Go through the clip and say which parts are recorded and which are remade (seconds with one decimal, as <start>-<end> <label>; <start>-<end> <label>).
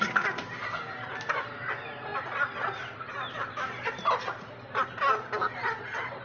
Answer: 0.0-6.2 recorded